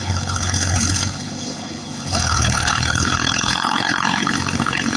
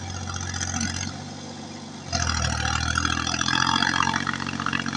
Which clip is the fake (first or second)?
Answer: first